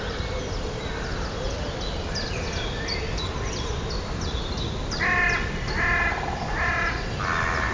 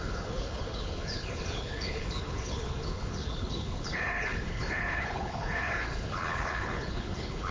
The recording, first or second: first